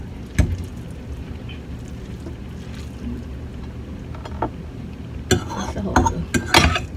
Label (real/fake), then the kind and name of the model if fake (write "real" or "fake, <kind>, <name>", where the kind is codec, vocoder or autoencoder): real